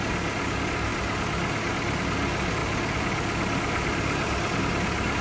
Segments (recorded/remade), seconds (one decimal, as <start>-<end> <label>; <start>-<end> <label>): 0.0-5.2 recorded